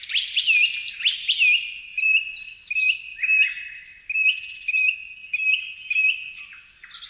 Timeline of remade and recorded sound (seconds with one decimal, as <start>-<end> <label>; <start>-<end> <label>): 0.0-7.1 recorded